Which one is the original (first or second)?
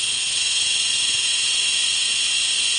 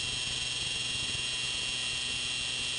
second